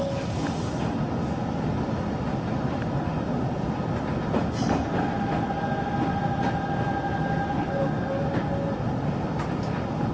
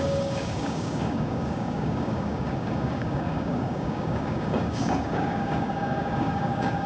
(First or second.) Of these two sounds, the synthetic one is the second